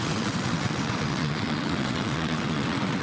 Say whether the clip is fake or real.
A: fake